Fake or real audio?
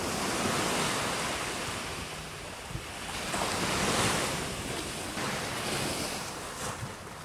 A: real